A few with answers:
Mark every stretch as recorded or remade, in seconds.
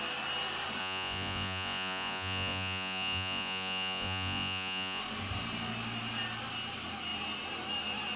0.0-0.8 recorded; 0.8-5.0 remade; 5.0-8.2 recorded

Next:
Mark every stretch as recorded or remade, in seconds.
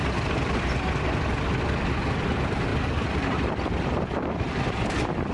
0.0-1.6 remade; 1.6-2.7 recorded; 2.7-5.3 remade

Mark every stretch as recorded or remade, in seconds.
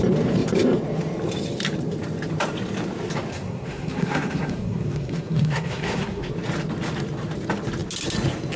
0.0-3.3 recorded; 3.3-6.3 remade; 6.3-8.6 recorded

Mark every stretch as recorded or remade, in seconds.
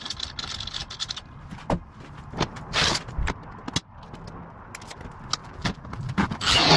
0.0-5.4 recorded; 5.4-6.8 remade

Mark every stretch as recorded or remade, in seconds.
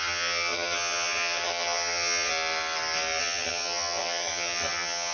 0.0-2.3 remade; 2.3-3.2 recorded; 3.2-5.1 remade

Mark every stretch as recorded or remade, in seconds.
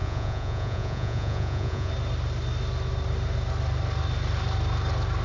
0.0-1.9 remade; 1.9-5.2 recorded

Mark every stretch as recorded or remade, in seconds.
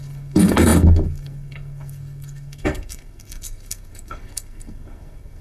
0.0-5.4 remade